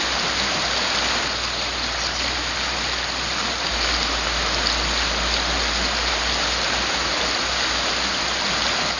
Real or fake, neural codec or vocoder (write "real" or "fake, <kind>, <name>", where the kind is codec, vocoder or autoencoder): real